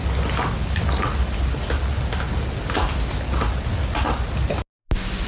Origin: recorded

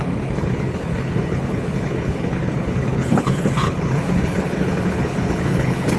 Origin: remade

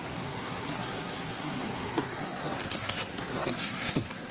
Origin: remade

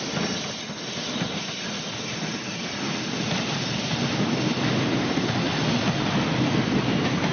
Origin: recorded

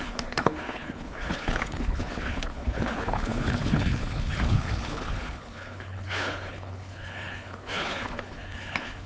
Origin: remade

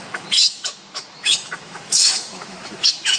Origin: remade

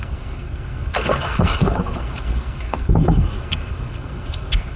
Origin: remade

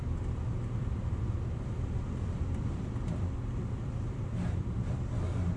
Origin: remade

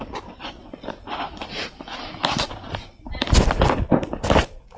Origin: recorded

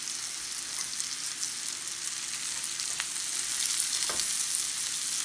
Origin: recorded